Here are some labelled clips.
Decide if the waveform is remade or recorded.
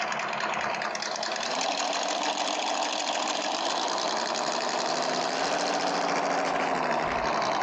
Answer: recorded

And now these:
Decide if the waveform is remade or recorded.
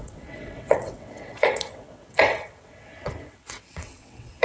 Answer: remade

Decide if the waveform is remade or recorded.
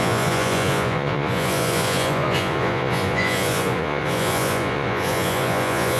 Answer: remade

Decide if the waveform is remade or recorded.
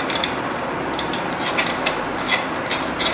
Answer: recorded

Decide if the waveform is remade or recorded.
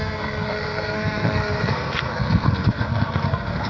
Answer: remade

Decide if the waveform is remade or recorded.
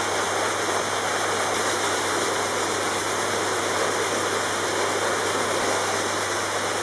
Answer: recorded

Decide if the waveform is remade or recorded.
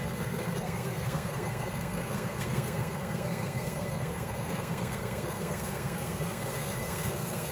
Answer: remade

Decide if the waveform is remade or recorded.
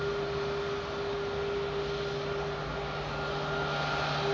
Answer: recorded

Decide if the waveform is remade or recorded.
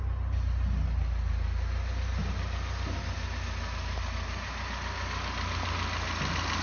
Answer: recorded